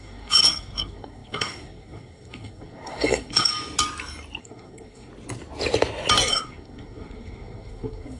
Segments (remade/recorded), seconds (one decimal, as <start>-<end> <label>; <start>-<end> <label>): 0.0-3.5 remade; 3.5-4.4 recorded; 4.4-5.1 remade; 5.1-6.3 recorded; 6.3-8.2 remade